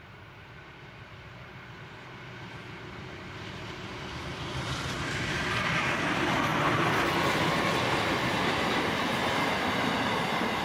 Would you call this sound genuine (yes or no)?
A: yes